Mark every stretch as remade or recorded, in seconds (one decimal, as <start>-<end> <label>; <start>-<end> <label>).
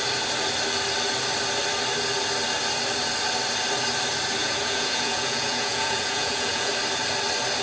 0.0-4.4 recorded; 4.4-6.7 remade; 6.7-7.6 recorded